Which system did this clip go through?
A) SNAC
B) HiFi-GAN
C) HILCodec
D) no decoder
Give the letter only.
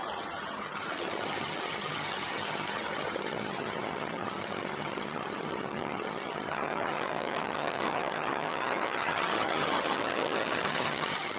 B